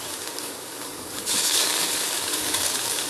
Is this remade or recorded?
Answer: remade